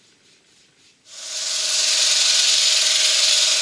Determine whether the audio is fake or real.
real